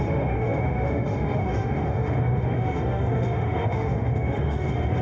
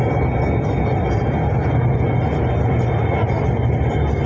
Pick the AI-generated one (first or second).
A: first